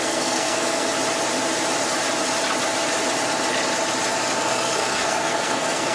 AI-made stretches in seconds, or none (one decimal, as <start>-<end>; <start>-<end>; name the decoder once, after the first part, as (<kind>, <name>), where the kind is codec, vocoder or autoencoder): 0.0-0.9 (codec, SNAC); 4.4-5.9